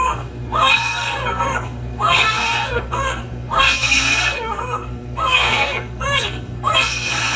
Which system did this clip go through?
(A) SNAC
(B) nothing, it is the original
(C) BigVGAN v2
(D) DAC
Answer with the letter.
A